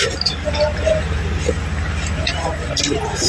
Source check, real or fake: real